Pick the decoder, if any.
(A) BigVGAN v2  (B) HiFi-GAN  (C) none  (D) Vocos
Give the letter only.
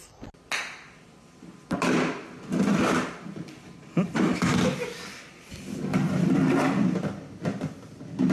C